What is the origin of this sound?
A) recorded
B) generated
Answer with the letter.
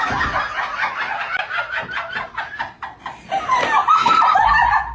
A